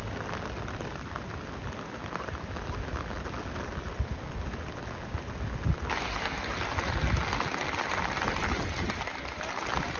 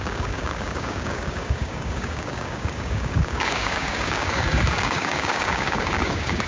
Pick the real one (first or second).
first